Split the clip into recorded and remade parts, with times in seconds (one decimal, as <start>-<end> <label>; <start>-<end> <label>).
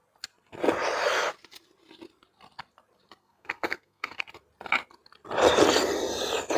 0.0-3.2 recorded; 3.2-4.2 remade; 4.2-6.6 recorded